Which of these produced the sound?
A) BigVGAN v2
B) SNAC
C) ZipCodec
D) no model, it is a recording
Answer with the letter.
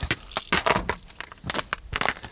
D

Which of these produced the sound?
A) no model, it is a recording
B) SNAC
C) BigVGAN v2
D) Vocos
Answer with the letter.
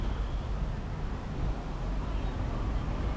A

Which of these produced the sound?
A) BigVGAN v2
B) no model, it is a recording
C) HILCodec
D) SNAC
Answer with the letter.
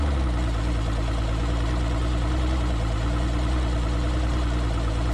B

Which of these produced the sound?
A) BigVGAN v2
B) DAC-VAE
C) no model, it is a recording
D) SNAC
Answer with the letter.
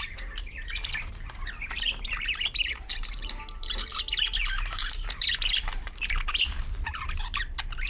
A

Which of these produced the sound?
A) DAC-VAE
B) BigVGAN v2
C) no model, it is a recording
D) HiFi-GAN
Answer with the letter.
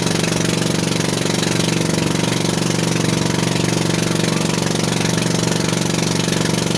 C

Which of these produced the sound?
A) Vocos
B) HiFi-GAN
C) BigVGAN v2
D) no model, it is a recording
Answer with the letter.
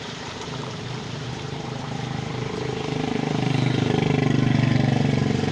C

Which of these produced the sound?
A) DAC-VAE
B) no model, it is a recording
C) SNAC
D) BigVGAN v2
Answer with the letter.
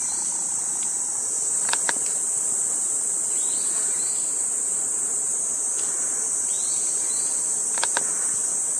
D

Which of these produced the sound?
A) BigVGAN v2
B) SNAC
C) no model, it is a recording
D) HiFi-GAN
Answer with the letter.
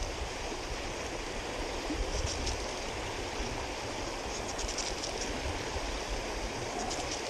A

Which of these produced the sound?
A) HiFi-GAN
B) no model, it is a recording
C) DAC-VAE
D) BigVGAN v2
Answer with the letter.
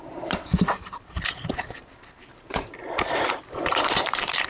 D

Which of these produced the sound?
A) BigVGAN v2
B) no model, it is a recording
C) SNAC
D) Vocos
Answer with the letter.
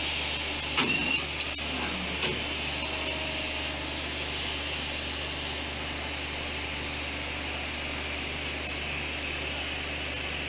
B